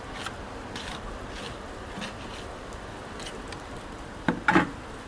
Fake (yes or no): no